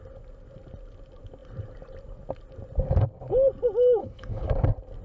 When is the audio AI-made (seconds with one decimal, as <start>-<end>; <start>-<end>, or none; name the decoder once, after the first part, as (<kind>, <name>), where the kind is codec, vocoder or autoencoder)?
4.0-4.5 (codec, HILCodec)